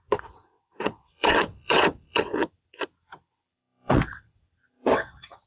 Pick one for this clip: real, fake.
fake